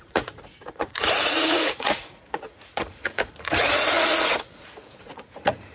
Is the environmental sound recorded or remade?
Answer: remade